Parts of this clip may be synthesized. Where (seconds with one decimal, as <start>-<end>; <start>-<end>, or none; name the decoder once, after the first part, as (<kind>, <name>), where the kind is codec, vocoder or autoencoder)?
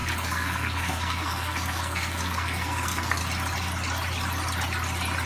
0.0-3.2 (codec, SNAC)